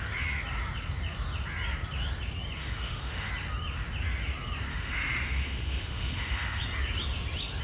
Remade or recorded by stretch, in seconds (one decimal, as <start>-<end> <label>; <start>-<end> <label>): 0.0-2.6 recorded; 2.6-3.3 remade; 3.3-4.7 recorded; 4.7-6.6 remade; 6.6-7.6 recorded